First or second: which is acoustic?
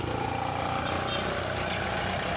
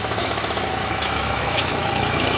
first